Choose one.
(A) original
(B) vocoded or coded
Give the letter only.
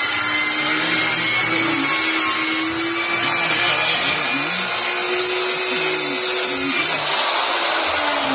A